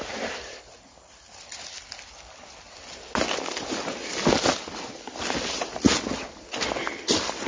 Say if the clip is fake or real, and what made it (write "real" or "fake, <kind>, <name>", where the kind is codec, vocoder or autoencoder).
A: real